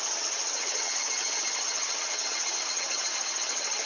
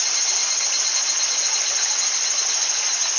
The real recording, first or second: second